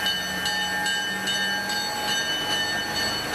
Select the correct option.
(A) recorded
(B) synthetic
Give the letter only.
A